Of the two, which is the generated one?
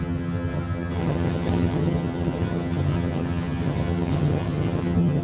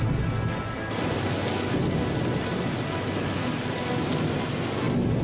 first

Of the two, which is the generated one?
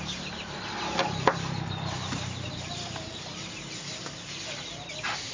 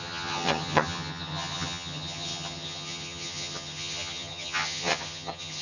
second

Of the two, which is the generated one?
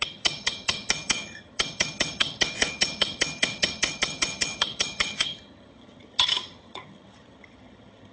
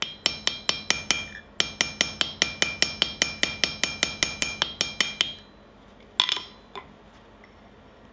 first